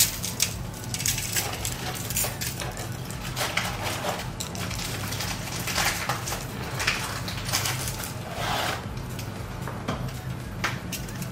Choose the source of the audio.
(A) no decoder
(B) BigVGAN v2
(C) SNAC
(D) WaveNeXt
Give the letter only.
A